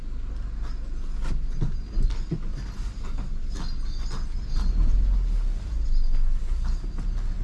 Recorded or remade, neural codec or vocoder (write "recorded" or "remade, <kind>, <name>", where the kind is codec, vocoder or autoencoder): recorded